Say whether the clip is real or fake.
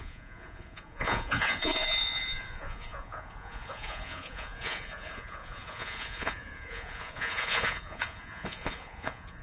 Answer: fake